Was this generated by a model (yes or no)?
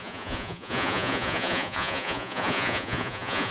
yes